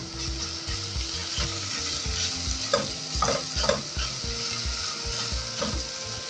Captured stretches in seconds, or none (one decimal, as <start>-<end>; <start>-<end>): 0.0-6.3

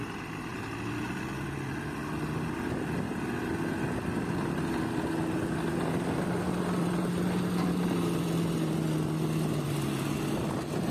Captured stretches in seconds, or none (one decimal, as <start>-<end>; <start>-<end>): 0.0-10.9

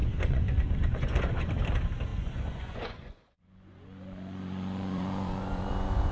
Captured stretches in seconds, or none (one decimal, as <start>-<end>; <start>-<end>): 1.5-2.1

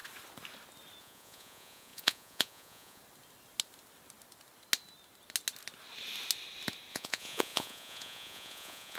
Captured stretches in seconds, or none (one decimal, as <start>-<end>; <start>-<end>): 0.0-1.0; 3.0-6.9

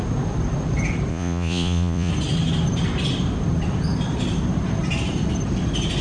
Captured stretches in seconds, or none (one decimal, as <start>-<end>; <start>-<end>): 0.0-1.1; 2.1-6.0

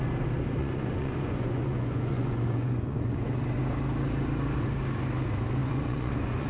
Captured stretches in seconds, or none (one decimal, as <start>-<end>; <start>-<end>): 0.0-0.6; 3.2-5.6

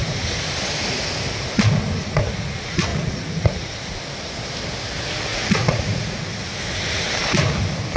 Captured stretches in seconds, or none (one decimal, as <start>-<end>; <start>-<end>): 0.0-2.9; 3.7-5.3; 6.3-8.0